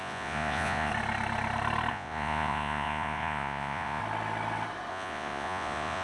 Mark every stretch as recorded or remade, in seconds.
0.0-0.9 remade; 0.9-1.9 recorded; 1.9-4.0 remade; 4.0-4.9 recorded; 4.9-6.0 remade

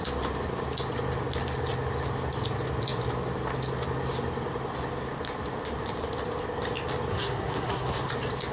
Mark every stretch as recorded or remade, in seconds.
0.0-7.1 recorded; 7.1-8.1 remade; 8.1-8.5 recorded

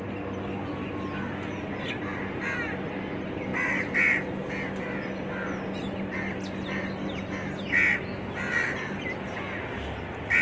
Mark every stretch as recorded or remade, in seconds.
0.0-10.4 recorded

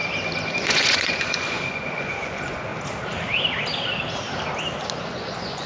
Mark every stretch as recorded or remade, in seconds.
0.0-0.5 recorded; 0.5-2.7 remade; 2.7-5.0 recorded; 5.0-5.7 remade